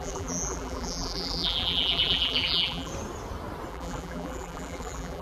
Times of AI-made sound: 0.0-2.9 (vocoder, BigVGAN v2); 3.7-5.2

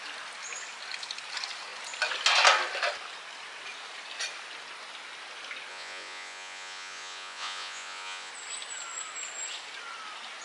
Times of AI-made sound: 5.7-8.3 (vocoder, Vocos)